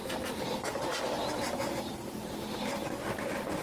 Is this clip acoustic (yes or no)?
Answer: yes